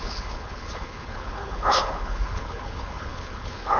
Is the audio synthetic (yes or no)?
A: yes